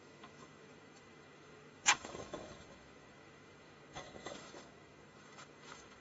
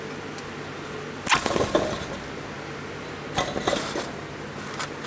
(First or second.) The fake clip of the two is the first